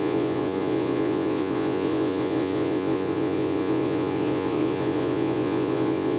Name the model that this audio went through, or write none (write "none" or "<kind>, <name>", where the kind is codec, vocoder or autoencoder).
vocoder, Vocos